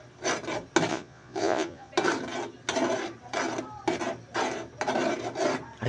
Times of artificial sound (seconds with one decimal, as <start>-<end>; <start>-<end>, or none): 0.9-1.9

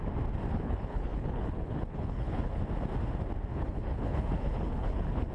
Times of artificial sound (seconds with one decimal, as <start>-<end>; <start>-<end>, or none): 0.5-2.6; 3.5-5.3